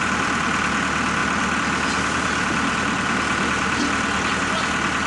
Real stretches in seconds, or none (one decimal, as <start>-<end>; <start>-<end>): 0.0-5.1